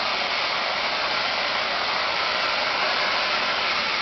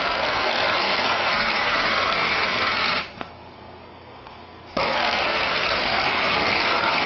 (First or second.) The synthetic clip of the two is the second